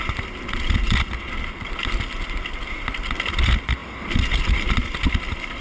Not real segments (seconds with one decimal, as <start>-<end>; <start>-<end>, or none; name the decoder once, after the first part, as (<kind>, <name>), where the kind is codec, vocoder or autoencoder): none